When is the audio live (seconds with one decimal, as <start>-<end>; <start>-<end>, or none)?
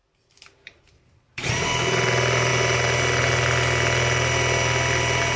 1.5-5.4